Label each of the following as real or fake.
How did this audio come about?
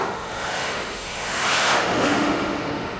fake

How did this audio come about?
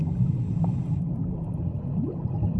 real